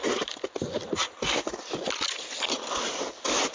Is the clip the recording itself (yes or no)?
yes